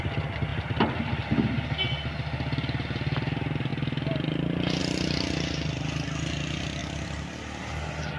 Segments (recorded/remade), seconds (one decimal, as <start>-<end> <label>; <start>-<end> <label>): 0.0-8.2 recorded